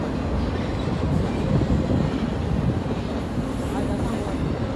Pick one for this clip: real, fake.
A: real